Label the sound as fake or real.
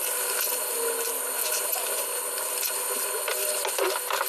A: real